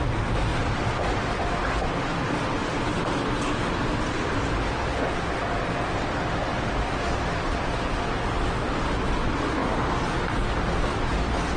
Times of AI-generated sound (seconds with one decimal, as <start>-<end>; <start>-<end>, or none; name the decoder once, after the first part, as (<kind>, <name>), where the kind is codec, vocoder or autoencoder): 0.5-1.2 (vocoder, BigVGAN v2); 6.5-8.0